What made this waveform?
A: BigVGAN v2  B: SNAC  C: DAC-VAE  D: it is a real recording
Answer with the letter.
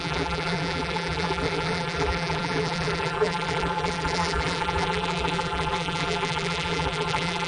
A